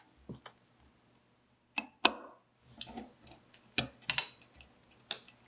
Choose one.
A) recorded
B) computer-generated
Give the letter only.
A